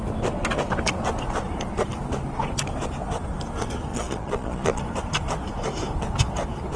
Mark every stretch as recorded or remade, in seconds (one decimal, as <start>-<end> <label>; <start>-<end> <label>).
0.0-3.9 recorded; 3.9-4.8 remade; 4.8-6.8 recorded